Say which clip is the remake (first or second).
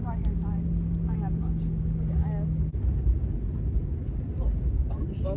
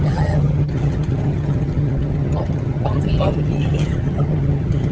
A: second